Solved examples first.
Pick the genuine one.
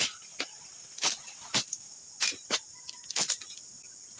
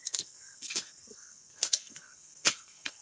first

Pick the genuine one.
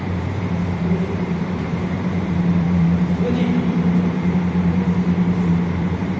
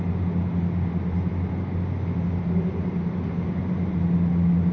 second